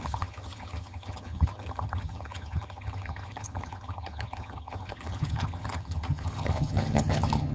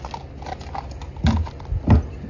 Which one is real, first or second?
second